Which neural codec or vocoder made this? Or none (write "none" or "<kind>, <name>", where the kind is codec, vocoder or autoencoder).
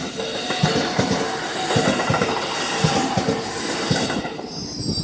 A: none